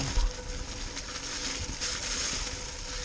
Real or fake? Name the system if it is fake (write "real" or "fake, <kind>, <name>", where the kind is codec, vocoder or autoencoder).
real